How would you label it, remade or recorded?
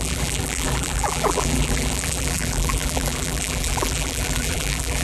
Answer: remade